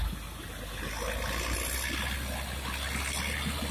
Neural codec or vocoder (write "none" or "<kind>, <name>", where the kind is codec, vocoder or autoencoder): none